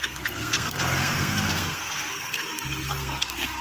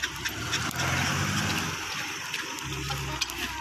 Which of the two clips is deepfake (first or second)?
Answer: first